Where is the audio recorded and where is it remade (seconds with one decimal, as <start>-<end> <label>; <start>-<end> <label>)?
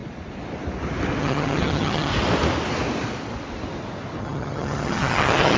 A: 0.0-1.2 recorded; 1.2-2.1 remade; 2.1-4.2 recorded; 4.2-5.6 remade